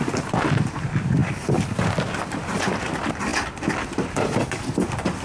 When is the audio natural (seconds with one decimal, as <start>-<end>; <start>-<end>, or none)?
3.3-5.2